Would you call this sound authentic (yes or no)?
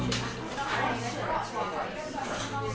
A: yes